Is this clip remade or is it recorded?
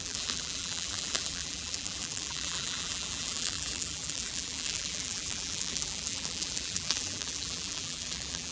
remade